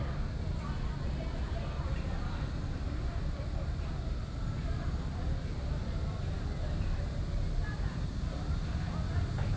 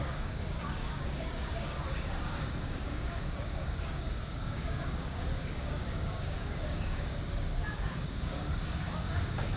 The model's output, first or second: second